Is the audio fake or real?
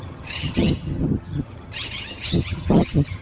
fake